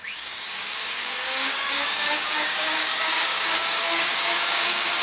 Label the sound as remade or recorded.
remade